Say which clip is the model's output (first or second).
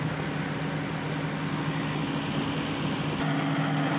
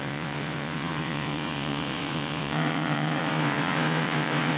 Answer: second